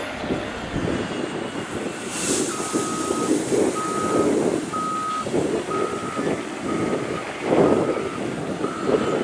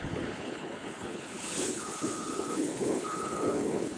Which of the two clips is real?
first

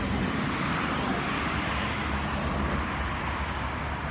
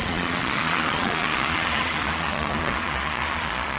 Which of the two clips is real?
first